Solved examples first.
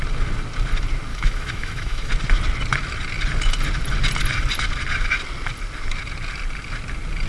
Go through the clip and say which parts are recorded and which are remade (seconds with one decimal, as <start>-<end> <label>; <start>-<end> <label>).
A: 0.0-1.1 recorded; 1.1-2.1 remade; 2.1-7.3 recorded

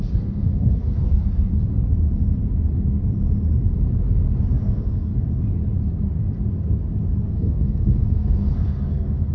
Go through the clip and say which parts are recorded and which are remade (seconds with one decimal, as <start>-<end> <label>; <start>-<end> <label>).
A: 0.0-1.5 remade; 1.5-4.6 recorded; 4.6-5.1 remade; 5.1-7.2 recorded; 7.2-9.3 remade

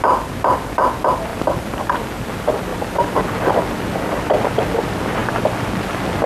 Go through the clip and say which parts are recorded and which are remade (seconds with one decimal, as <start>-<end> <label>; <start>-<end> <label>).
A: 0.0-1.3 recorded; 1.3-1.9 remade; 1.9-2.7 recorded; 2.7-3.5 remade; 3.5-6.3 recorded

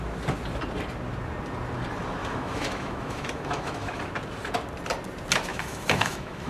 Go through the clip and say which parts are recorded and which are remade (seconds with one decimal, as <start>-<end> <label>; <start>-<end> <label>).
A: 0.0-2.2 recorded; 2.2-4.0 remade; 4.0-5.5 recorded; 5.5-6.5 remade

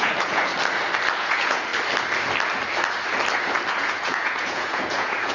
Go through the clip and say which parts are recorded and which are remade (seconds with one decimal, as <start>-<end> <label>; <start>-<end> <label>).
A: 0.0-0.5 remade; 0.5-1.2 recorded; 1.2-1.7 remade; 1.7-3.7 recorded; 3.7-5.3 remade